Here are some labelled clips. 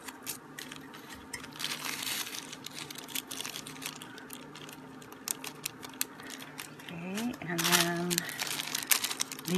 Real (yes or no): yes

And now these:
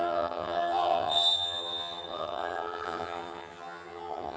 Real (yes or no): no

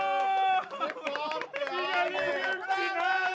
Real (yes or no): yes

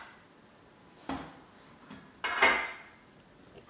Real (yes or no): yes